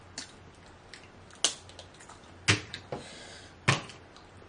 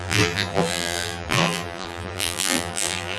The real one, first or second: first